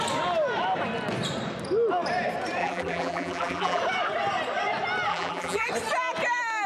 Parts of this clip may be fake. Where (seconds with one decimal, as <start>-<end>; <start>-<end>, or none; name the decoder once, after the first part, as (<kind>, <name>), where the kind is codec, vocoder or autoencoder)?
2.6-3.8 (vocoder, BigVGAN v2); 5.1-5.7